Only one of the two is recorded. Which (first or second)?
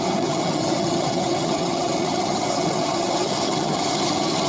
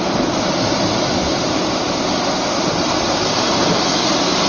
second